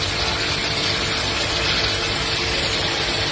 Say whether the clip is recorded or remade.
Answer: recorded